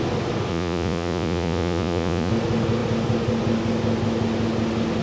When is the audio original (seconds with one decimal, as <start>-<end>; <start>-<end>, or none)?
0.0-0.5; 2.3-5.0